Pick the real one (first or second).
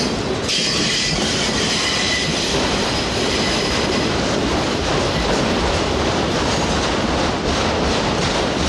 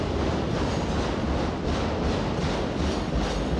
second